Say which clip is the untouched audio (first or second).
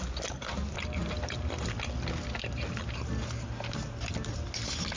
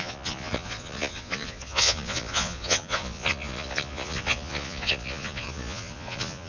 first